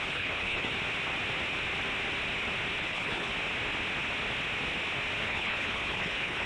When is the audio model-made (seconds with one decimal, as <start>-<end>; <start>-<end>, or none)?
0.0-0.7; 2.8-3.3; 5.2-6.5